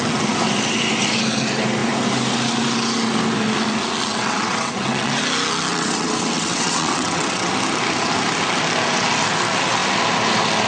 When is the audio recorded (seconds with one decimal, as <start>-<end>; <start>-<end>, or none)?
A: 0.0-4.1; 5.2-5.7; 7.5-10.7